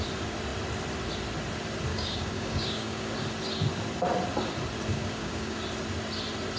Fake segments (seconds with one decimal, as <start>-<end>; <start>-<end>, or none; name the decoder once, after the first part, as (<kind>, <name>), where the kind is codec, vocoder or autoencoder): 1.9-3.1 (codec, DAC); 4.9-5.6